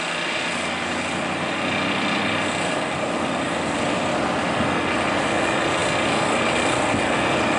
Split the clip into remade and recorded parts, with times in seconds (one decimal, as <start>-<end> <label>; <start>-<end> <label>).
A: 0.0-7.6 recorded